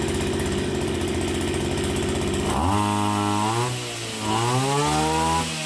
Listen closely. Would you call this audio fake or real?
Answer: real